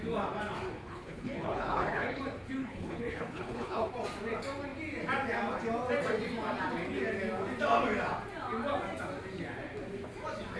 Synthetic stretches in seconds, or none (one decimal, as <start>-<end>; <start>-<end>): 0.8-2.2; 2.6-3.9